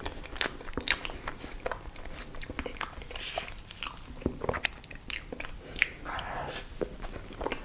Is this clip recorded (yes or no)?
yes